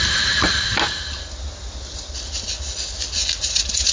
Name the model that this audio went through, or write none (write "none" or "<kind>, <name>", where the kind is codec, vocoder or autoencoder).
none